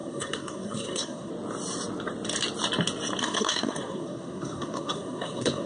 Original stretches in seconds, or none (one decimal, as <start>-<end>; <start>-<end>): 1.3-3.2